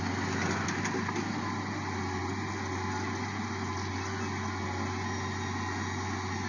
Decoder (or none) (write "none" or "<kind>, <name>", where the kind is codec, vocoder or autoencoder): none